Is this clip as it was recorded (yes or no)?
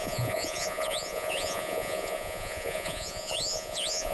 no